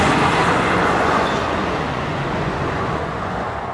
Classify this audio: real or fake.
fake